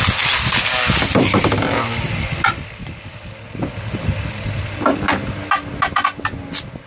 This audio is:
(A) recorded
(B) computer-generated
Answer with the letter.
A